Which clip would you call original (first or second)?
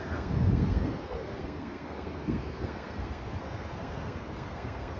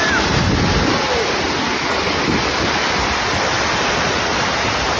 second